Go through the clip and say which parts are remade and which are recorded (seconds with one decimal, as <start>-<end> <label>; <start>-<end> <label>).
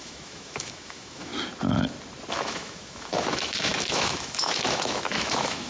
0.0-1.3 remade; 1.3-2.3 recorded; 2.3-5.7 remade